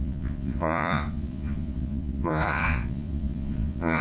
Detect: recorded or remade remade